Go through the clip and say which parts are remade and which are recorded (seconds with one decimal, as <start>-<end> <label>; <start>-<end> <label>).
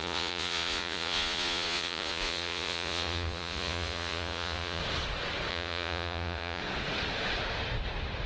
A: 0.0-4.8 remade; 4.8-5.5 recorded; 5.5-6.6 remade; 6.6-8.3 recorded